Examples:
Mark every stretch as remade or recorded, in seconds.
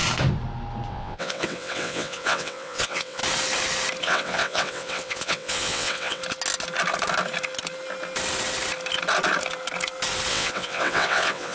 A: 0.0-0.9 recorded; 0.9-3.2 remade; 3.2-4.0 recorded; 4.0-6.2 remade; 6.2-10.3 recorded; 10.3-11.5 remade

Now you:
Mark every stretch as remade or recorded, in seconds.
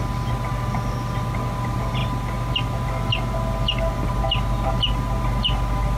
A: 0.0-6.0 recorded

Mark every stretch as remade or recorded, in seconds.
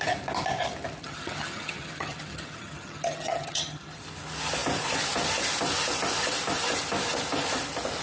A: 0.0-1.0 recorded; 1.0-4.0 remade; 4.0-8.0 recorded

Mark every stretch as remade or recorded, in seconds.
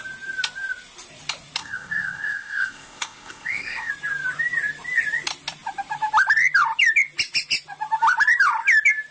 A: 0.0-1.6 recorded; 1.6-3.9 remade; 3.9-9.1 recorded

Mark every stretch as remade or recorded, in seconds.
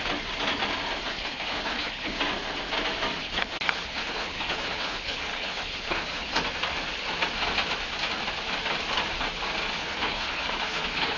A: 0.0-1.1 recorded; 1.1-2.2 remade; 2.2-3.2 recorded; 3.2-6.3 remade; 6.3-9.8 recorded; 9.8-11.2 remade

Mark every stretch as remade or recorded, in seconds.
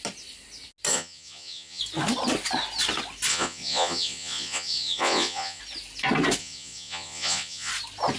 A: 0.0-0.9 recorded; 0.9-1.8 remade; 1.8-3.3 recorded; 3.3-5.6 remade; 5.6-6.4 recorded; 6.4-7.7 remade; 7.7-8.2 recorded